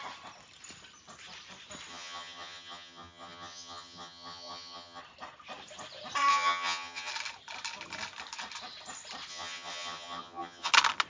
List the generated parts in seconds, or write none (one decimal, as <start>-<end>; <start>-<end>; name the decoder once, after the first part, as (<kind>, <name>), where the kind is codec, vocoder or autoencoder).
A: 1.9-5.0 (vocoder, HiFi-GAN); 6.3-7.1; 9.3-10.7